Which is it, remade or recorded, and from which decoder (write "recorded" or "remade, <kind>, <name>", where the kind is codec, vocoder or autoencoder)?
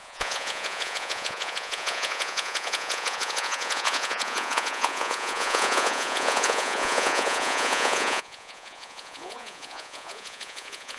remade, vocoder, Vocos